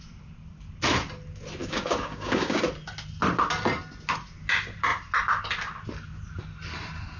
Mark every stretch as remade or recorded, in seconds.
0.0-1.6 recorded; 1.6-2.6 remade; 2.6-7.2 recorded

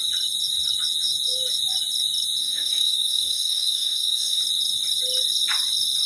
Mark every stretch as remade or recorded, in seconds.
0.0-2.4 recorded; 2.4-4.4 remade; 4.4-6.1 recorded

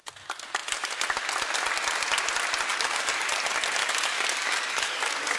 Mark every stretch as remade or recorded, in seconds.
0.0-2.7 recorded; 2.7-3.3 remade; 3.3-3.8 recorded; 3.8-5.4 remade

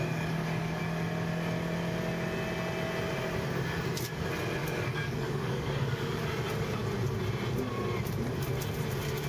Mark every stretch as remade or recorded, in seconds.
0.0-0.8 remade; 0.8-4.6 recorded; 4.6-6.2 remade; 6.2-9.3 recorded

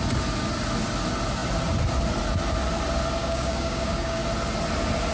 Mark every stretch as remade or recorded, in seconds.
0.0-3.2 recorded; 3.2-4.2 remade; 4.2-5.1 recorded

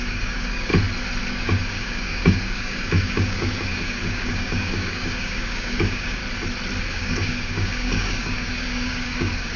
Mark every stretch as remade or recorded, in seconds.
0.0-0.7 remade; 0.7-1.3 recorded; 1.3-6.2 remade; 6.2-6.9 recorded; 6.9-9.6 remade

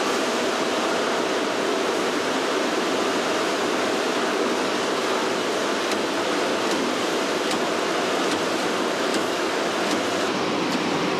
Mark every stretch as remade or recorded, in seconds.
0.0-4.3 recorded; 4.3-4.9 remade; 4.9-9.1 recorded; 9.1-9.7 remade; 9.7-11.2 recorded